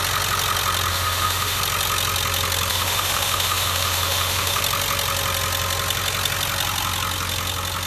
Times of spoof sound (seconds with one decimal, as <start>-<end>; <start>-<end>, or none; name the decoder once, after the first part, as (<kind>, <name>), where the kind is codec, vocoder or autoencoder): 0.9-1.6 (autoencoder, DAC-VAE); 2.7-4.6